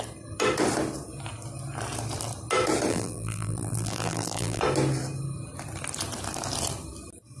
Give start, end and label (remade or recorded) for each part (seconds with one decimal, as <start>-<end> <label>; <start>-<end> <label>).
0.0-2.9 recorded; 2.9-4.6 remade; 4.6-7.4 recorded